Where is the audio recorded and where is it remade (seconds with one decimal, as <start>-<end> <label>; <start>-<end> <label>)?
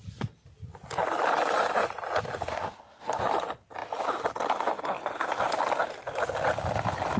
0.0-2.5 recorded; 2.5-3.2 remade; 3.2-7.2 recorded